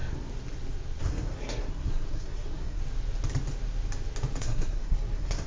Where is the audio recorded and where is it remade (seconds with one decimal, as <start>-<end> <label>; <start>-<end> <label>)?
0.0-1.0 recorded; 1.0-2.8 remade; 2.8-4.4 recorded; 4.4-5.5 remade